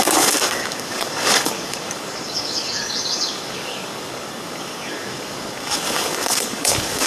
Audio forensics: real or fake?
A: fake